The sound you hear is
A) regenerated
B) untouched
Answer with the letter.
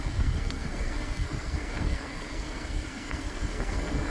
A